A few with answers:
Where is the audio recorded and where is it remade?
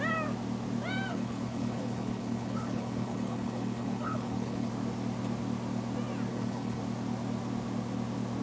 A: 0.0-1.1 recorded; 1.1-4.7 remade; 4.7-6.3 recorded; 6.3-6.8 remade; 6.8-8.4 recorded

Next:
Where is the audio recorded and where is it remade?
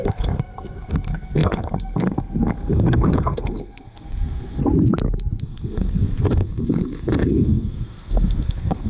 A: 0.0-4.6 remade; 4.6-5.4 recorded; 5.4-8.9 remade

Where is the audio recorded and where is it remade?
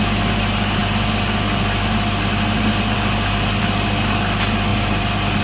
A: 0.0-5.4 recorded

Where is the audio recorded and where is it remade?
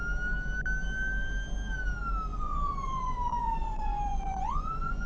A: 0.0-2.3 recorded; 2.3-5.1 remade